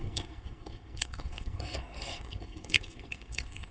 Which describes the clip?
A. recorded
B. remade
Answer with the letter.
B